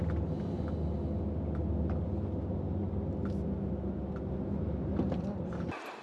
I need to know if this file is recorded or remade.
recorded